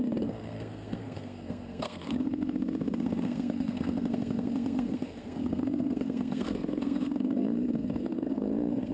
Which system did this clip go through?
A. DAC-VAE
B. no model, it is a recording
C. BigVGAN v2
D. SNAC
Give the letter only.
D